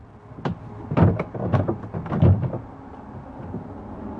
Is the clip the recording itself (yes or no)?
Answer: yes